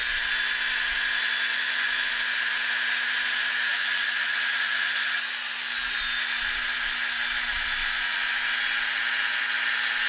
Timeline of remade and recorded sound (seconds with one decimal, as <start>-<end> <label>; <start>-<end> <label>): 0.0-1.5 recorded; 1.5-2.1 remade; 2.1-3.7 recorded; 3.7-5.5 remade; 5.5-7.8 recorded; 7.8-8.4 remade; 8.4-10.1 recorded